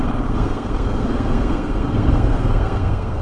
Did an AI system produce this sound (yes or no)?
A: yes